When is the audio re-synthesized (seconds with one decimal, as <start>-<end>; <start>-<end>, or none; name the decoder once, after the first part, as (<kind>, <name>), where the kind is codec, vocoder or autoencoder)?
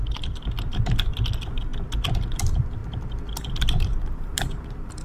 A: 0.0-1.7 (vocoder, BigVGAN v2); 2.3-5.0